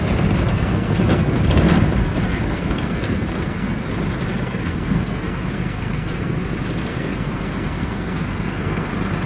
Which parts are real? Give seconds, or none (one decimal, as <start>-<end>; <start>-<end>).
0.0-0.5; 1.4-2.0; 3.9-4.3; 6.4-6.9; 8.9-9.3

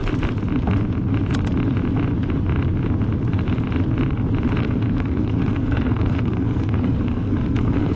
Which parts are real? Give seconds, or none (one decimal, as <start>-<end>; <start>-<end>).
0.0-4.6

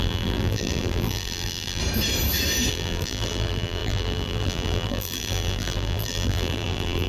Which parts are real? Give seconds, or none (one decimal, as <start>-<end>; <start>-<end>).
1.8-2.7

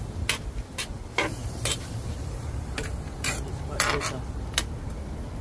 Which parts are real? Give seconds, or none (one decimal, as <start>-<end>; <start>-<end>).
0.0-1.4; 4.6-5.4

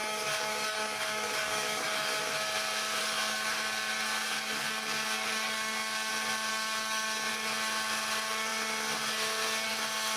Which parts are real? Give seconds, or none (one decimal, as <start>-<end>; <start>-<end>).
2.2-3.0; 6.1-6.5; 7.3-10.2